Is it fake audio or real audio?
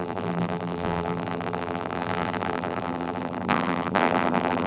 fake